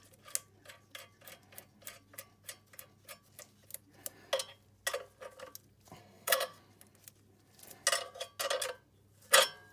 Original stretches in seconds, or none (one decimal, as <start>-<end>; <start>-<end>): 0.0-6.0; 6.6-9.7